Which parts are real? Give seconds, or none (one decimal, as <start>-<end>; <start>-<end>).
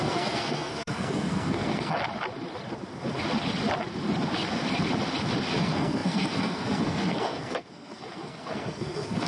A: 2.0-5.6